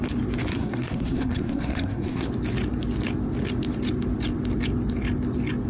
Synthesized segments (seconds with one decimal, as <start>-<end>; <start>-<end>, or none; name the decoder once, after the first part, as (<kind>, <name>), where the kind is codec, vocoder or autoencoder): 0.5-2.3 (codec, SNAC)